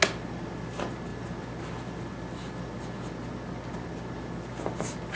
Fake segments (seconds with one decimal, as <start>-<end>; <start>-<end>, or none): none